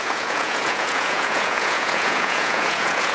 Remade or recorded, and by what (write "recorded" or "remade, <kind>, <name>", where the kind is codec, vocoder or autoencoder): remade, vocoder, Vocos